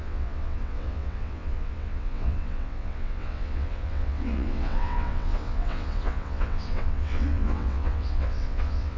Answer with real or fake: fake